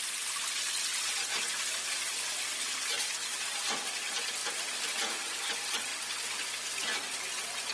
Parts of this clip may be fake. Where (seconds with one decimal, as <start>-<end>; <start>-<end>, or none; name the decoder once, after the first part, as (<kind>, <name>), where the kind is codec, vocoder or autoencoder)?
none